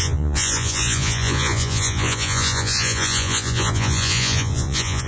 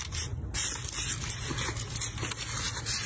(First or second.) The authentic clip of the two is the second